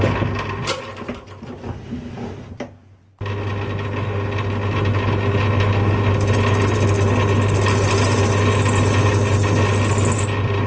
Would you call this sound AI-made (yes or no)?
no